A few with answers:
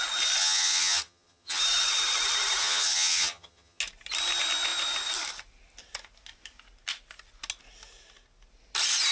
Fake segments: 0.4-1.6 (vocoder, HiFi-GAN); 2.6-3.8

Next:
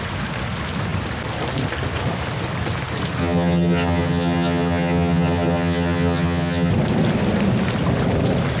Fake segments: 3.2-6.7 (vocoder, HiFi-GAN)

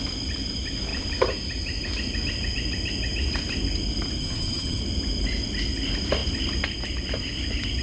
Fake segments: 4.2-4.8 (vocoder, HiFi-GAN)

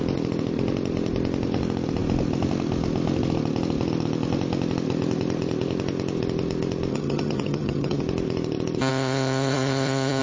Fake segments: 6.9-8.0 (vocoder, HiFi-GAN); 8.9-10.2